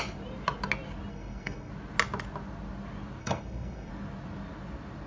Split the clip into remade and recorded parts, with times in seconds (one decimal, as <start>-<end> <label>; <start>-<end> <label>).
0.0-1.1 recorded; 1.1-1.7 remade; 1.7-3.2 recorded; 3.2-3.9 remade; 3.9-5.1 recorded